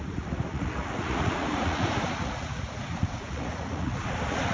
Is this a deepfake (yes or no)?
yes